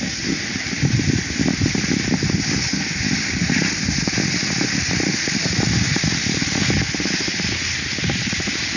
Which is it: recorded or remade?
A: recorded